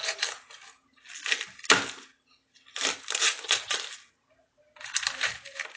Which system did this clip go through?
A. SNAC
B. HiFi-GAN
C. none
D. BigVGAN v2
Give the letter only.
C